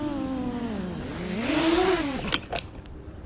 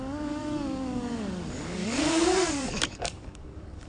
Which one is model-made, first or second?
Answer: second